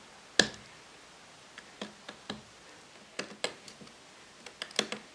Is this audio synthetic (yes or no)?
no